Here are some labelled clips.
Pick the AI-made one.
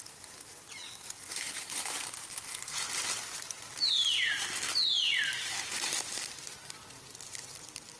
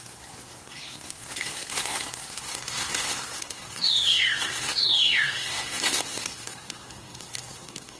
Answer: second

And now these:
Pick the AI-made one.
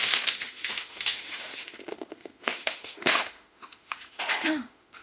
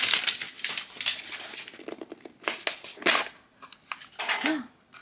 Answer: first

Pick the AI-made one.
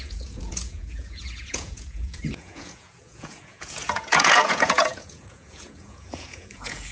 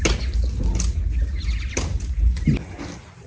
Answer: first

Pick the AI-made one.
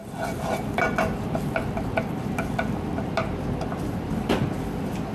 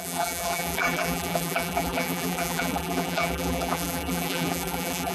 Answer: second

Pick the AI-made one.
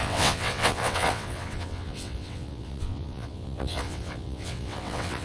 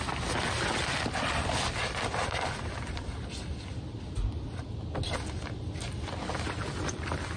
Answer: first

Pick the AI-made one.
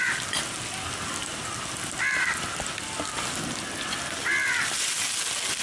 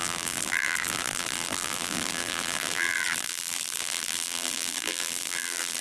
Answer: second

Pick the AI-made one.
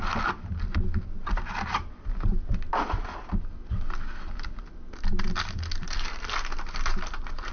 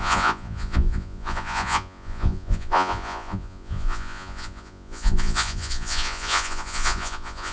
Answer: second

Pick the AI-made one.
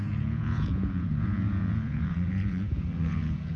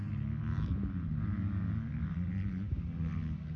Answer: first